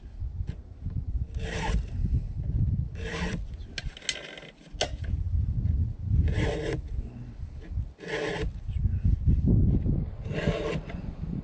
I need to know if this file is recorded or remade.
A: recorded